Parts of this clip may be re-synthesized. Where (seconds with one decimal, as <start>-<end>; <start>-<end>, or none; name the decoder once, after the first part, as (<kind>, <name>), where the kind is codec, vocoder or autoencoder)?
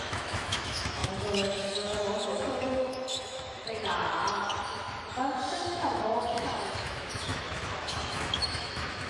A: 0.0-4.2 (autoencoder, DAC-VAE); 5.1-9.1